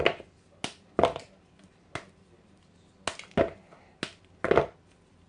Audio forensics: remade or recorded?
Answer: recorded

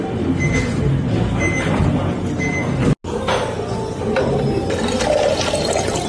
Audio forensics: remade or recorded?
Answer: recorded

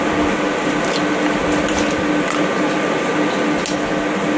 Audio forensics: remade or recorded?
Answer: recorded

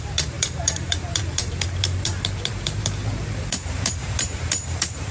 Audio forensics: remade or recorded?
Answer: remade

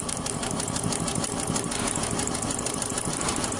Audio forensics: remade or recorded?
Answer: remade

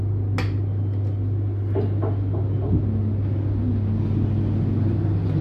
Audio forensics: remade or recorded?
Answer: recorded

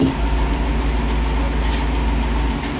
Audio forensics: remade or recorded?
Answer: recorded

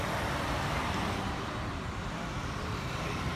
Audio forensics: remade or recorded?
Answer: remade